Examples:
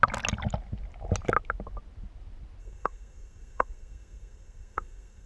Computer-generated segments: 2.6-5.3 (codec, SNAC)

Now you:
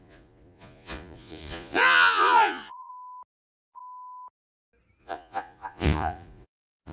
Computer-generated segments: 0.0-2.9 (vocoder, Vocos); 3.4-3.8; 5.0-6.9

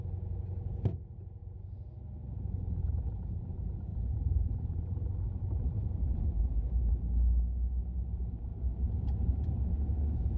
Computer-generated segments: 3.9-7.0 (vocoder, BigVGAN v2); 8.5-9.6